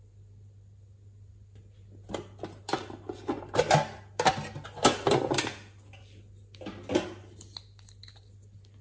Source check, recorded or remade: recorded